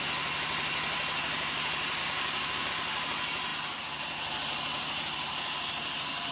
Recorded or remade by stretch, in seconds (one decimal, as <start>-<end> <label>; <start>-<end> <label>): 0.0-2.0 recorded; 2.0-2.7 remade; 2.7-6.3 recorded